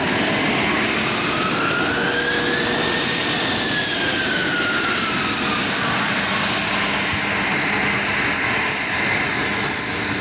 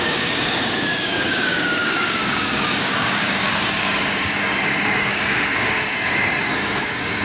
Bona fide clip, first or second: first